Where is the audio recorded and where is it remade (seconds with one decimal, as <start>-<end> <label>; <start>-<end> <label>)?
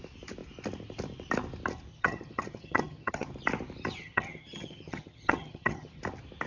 0.0-1.9 recorded; 1.9-3.3 remade; 3.3-4.0 recorded; 4.0-6.0 remade; 6.0-6.5 recorded